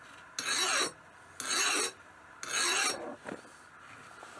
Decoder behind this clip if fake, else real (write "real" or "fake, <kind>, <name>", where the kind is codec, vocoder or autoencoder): real